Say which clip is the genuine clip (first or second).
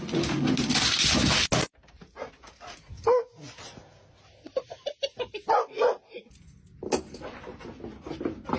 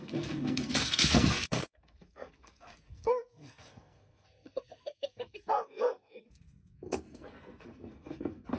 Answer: first